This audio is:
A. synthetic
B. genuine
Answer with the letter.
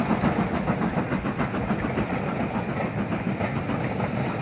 B